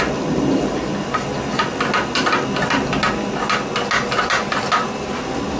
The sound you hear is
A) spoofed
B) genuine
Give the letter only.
B